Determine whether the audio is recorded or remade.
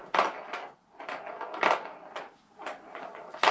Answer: recorded